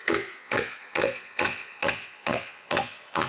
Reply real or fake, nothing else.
fake